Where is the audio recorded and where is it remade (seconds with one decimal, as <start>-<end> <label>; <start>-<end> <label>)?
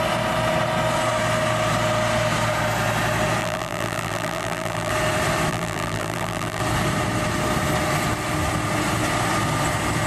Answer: 0.0-3.4 recorded; 3.4-4.9 remade; 4.9-5.5 recorded; 5.5-6.6 remade; 6.6-10.1 recorded